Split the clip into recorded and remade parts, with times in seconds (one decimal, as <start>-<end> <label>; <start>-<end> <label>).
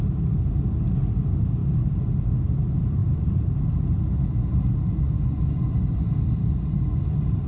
0.0-1.6 recorded; 1.6-2.2 remade; 2.2-3.0 recorded; 3.0-3.8 remade; 3.8-7.5 recorded